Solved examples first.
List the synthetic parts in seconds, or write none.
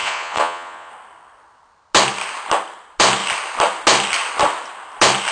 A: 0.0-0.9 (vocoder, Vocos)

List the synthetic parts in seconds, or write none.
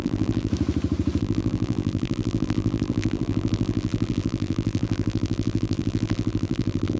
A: 0.0-0.5 (vocoder, BigVGAN v2); 1.2-7.0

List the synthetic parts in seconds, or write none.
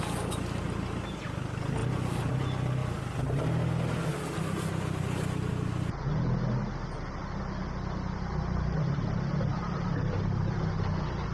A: 9.5-10.6 (vocoder, BigVGAN v2)